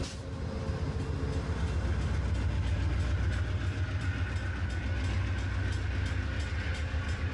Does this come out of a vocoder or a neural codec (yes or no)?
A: no